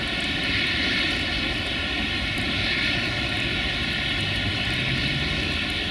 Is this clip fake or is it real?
real